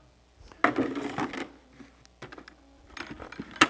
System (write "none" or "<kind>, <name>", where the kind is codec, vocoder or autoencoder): none